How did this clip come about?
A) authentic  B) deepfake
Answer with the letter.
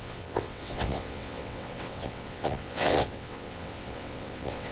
B